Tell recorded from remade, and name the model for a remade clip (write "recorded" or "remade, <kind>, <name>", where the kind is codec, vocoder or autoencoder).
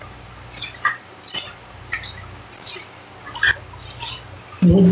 recorded